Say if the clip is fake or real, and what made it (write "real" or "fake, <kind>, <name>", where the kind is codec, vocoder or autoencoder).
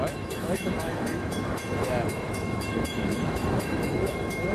fake, autoencoder, DAC-VAE